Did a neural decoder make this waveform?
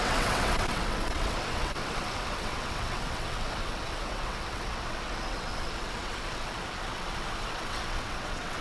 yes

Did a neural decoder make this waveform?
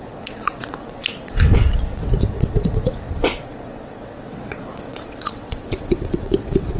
yes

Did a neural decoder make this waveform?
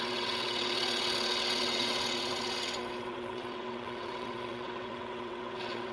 yes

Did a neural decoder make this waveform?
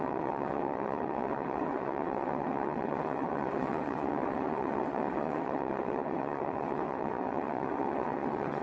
yes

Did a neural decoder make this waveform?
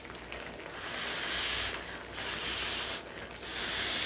no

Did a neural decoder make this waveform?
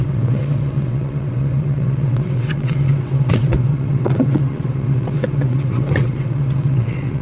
yes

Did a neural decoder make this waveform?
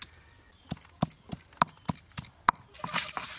no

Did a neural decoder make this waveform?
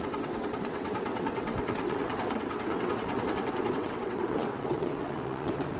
yes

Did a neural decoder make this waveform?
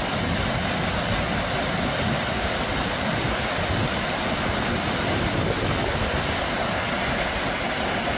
no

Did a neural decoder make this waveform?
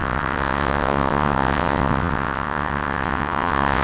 yes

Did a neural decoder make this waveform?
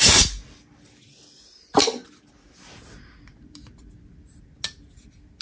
no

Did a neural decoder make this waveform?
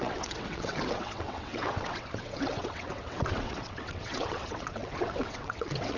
yes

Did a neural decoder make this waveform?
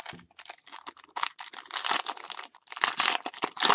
no